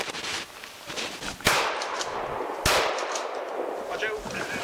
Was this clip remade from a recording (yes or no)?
no